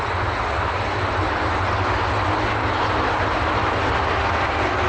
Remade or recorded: recorded